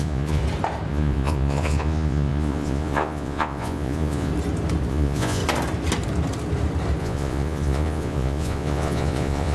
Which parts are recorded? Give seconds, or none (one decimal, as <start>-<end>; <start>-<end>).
0.4-0.9; 4.3-4.9; 5.4-7.0